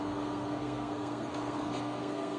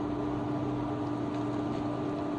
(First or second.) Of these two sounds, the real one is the second